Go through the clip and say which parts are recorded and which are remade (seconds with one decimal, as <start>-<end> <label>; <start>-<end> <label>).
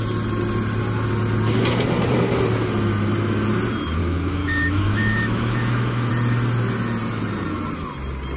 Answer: 0.0-4.0 recorded; 4.0-6.1 remade; 6.1-8.4 recorded